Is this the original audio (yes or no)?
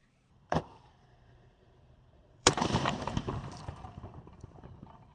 no